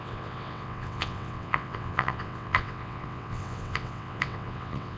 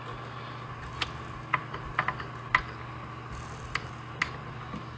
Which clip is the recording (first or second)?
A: second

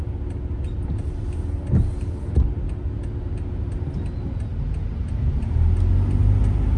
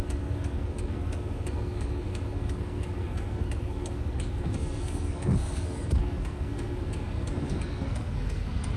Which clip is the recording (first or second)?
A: first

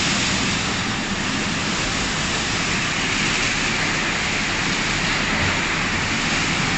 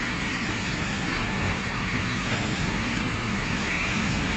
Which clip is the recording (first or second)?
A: first